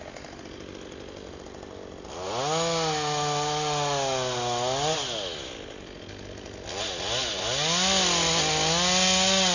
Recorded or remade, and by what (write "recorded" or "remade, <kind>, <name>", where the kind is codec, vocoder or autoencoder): recorded